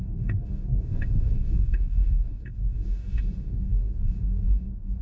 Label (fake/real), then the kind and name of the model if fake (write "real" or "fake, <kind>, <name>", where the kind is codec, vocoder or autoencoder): fake, codec, DAC